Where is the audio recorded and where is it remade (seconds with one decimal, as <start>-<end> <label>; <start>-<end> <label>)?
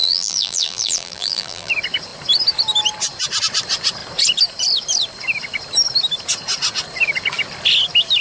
0.0-1.7 remade; 1.7-8.2 recorded